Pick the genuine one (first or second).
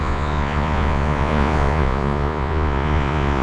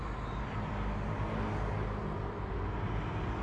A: second